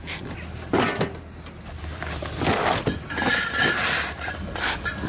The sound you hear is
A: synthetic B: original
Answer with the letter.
B